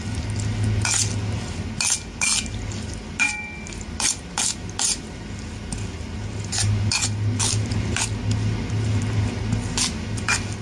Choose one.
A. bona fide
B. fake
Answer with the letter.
A